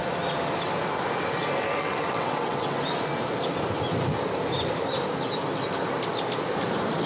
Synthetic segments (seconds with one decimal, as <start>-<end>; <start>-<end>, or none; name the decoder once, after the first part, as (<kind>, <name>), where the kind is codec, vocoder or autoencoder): 1.8-2.8 (vocoder, WaveNeXt)

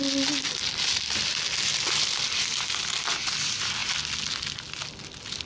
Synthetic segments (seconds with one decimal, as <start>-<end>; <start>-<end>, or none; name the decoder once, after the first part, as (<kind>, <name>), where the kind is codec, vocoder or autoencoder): none

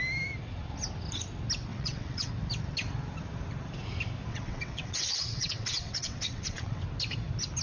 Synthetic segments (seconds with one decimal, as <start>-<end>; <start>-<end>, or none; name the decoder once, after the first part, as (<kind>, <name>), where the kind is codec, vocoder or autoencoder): 1.7-2.3 (vocoder, WaveNeXt); 4.3-6.8